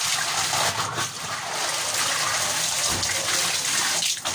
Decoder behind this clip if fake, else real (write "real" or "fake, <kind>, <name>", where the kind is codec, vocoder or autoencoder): real